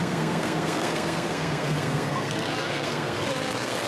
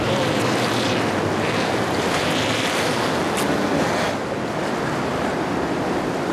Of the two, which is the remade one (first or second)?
first